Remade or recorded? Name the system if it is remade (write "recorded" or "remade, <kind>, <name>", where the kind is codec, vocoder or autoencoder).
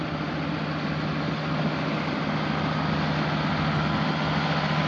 recorded